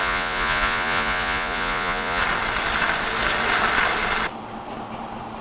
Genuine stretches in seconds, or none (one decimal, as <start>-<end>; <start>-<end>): 2.2-5.4